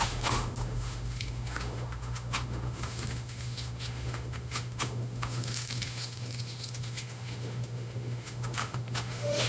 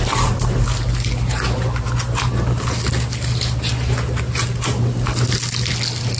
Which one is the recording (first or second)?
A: second